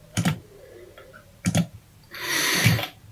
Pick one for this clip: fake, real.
fake